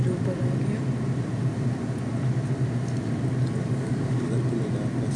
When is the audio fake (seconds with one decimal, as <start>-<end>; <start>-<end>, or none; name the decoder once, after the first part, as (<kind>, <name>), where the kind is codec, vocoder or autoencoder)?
3.6-4.3 (codec, DAC)